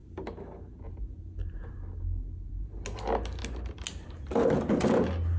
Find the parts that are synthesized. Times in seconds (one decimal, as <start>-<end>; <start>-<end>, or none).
none